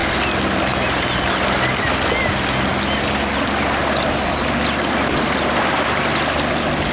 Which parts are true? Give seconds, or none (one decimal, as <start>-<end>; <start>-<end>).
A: 0.0-6.9